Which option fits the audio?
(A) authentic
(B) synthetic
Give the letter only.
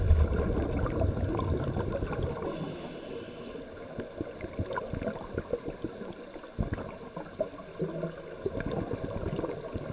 A